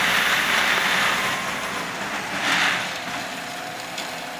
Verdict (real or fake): fake